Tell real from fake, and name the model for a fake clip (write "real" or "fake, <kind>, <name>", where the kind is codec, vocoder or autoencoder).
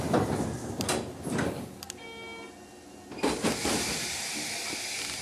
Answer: real